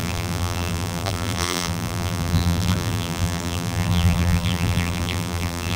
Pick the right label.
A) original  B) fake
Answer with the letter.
B